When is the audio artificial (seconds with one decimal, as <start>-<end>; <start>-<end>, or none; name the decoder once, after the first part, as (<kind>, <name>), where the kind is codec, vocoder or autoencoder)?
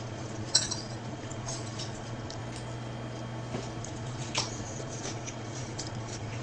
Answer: 0.0-2.4 (vocoder, Vocos); 3.8-6.4